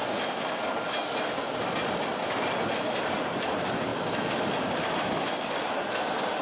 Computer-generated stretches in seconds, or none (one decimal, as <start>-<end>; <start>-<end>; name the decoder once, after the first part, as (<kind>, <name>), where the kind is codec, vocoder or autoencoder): 2.8-3.9 (vocoder, BigVGAN v2); 5.6-6.4